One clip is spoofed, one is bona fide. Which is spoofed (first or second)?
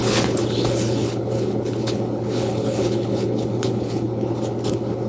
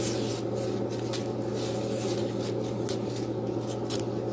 first